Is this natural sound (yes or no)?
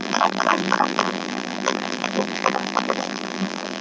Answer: no